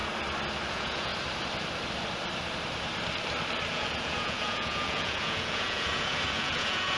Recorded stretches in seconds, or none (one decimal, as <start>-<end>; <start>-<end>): 0.0-0.7; 1.1-3.7